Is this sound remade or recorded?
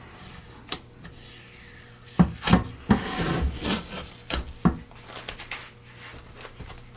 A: recorded